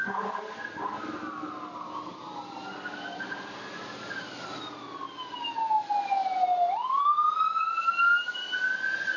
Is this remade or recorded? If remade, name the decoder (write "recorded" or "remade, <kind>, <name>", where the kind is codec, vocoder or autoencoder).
recorded